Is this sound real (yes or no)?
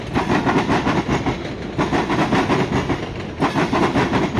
yes